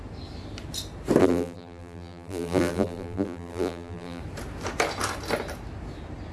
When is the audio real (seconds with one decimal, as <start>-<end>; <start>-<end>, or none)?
0.0-1.2; 4.2-6.3